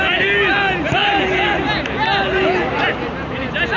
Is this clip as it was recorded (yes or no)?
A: yes